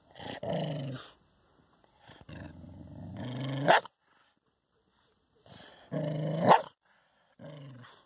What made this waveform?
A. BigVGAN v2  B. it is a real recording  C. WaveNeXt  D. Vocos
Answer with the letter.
B